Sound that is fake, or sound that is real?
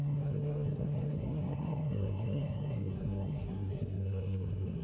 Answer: fake